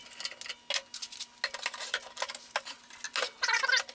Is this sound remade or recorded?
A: recorded